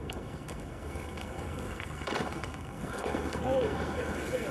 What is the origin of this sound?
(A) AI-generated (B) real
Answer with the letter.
A